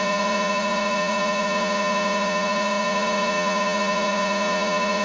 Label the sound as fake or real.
fake